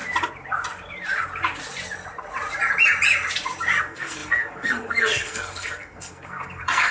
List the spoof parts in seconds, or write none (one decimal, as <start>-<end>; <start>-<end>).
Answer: 3.8-6.9